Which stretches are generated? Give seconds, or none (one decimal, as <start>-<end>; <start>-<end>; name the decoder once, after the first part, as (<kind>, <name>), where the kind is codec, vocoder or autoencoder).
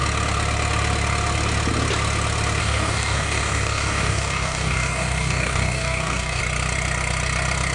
2.6-6.4 (codec, DAC)